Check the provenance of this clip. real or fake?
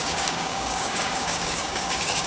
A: fake